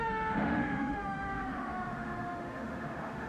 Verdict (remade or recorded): remade